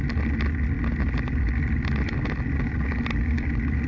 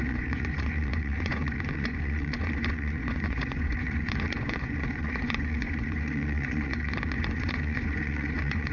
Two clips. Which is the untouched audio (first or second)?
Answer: first